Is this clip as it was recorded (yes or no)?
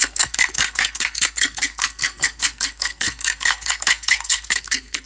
no